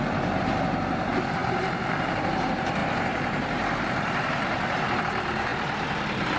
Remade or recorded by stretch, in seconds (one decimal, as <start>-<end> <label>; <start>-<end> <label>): 0.0-5.5 remade; 5.5-6.0 recorded; 6.0-6.4 remade